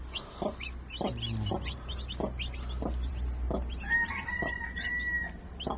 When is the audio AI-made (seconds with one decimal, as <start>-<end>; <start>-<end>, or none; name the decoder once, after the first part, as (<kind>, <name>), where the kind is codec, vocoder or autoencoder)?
none